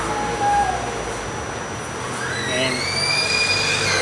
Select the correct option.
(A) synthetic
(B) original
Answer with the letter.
B